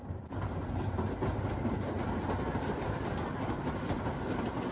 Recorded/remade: recorded